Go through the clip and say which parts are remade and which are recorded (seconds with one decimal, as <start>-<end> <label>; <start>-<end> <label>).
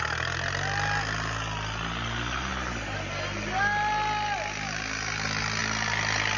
0.0-6.4 recorded